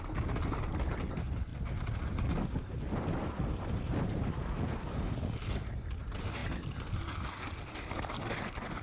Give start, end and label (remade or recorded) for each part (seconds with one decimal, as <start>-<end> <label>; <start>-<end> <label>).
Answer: 0.0-8.8 recorded